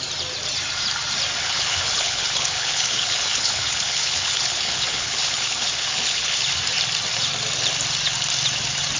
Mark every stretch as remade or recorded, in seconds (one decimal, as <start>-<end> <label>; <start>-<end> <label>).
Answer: 0.0-1.4 recorded; 1.4-6.5 remade; 6.5-9.0 recorded